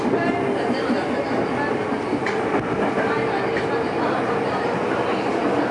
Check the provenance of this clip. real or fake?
real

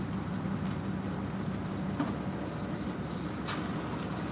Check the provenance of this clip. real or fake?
real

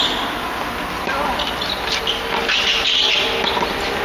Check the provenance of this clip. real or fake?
real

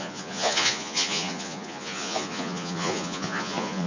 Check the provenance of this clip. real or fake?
fake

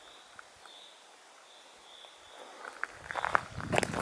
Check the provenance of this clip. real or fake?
real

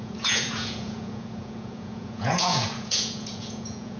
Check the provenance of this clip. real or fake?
fake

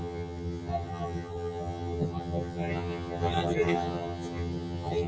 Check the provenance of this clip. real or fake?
fake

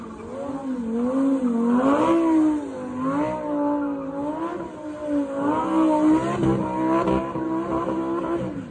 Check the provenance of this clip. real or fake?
real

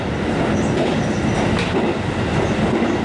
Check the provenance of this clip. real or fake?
real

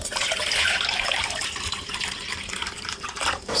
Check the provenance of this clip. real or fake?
real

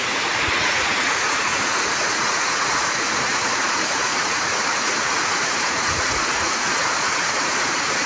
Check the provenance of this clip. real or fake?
fake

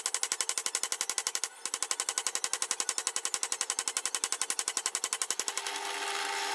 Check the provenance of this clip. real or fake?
real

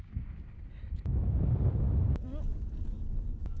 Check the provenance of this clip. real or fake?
real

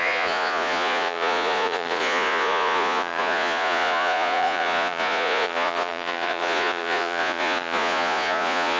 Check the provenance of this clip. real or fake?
fake